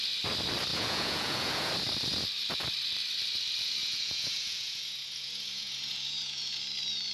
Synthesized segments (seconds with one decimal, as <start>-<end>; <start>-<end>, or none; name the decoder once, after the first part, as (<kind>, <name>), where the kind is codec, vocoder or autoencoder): 0.7-1.7 (vocoder, Vocos); 3.8-6.6